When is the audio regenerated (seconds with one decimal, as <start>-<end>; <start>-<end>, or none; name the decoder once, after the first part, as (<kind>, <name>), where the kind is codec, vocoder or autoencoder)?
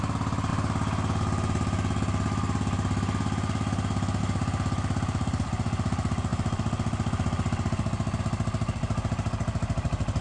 none